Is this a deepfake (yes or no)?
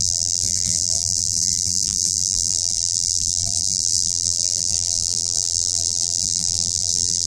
yes